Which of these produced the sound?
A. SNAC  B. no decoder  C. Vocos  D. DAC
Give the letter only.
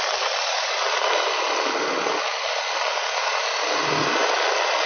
B